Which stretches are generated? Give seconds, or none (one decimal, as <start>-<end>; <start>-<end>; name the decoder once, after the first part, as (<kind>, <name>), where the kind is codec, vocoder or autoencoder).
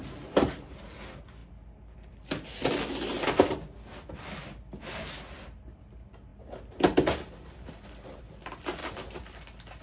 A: none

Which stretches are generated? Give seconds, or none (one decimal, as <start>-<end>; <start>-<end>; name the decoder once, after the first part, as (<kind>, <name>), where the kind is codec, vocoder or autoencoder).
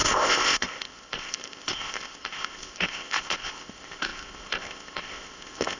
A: 0.0-5.8 (codec, ZipCodec)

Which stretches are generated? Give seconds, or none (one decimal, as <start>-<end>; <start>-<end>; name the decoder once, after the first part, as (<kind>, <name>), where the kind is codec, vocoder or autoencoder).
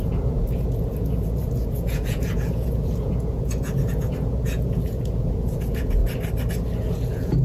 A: 0.0-6.0 (vocoder, Vocos); 6.9-7.4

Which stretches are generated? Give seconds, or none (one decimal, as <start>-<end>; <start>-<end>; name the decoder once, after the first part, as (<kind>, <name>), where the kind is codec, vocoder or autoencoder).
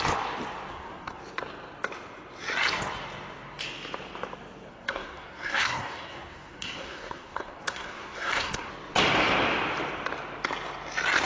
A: 0.7-1.2 (codec, SNAC); 4.7-8.7